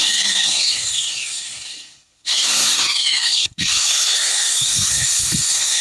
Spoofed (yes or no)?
yes